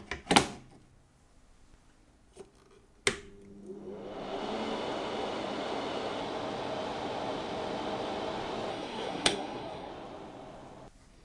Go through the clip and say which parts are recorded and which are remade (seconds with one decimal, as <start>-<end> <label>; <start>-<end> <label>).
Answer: 0.0-8.7 recorded; 8.7-9.9 remade; 9.9-11.2 recorded